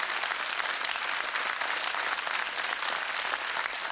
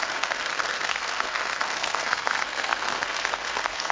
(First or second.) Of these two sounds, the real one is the first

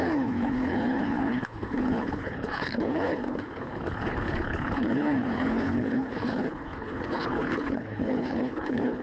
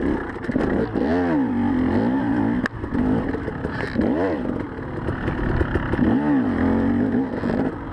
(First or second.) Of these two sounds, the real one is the second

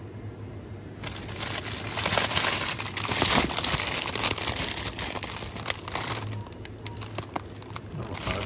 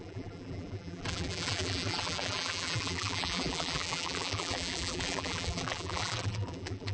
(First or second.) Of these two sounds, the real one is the first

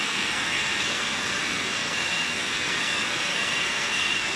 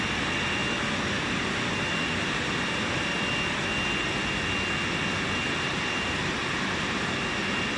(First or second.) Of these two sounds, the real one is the second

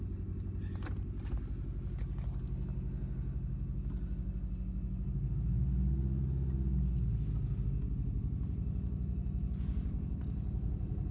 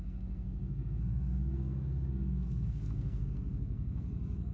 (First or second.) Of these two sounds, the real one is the first